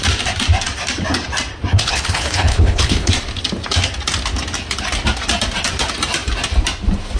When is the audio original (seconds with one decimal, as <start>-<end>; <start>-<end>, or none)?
0.0-1.7; 3.1-7.2